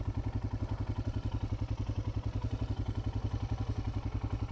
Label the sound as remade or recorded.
recorded